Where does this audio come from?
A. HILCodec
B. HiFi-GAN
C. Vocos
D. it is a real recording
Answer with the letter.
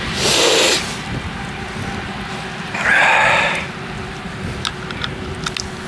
D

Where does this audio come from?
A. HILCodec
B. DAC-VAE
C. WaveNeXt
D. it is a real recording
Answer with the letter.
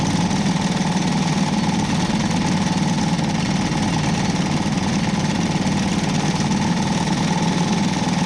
D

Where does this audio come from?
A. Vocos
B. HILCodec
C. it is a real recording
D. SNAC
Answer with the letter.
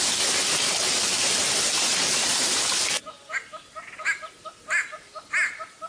C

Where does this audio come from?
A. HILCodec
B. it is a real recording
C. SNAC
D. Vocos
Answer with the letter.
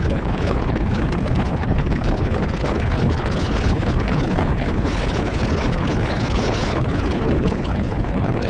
A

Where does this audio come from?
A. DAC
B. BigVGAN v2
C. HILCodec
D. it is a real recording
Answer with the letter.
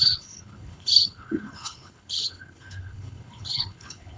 C